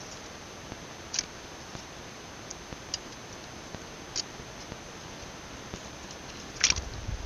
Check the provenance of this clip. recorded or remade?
recorded